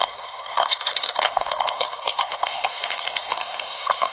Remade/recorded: remade